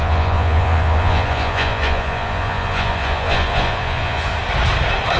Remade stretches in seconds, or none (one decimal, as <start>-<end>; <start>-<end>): 0.0-4.3